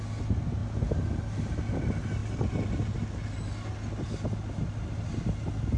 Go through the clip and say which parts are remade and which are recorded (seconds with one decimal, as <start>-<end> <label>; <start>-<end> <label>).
0.0-5.8 recorded